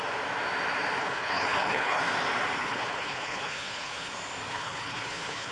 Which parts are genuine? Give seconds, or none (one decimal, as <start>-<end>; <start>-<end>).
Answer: 0.0-1.0; 2.0-2.6; 4.1-4.5